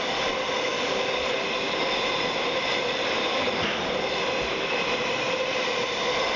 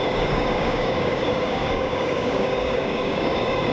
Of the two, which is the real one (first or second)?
first